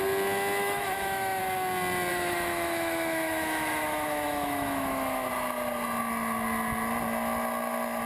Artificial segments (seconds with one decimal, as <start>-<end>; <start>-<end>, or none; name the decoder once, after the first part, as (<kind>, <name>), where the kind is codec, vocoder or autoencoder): 0.6-1.4 (autoencoder, DAC-VAE); 2.1-5.3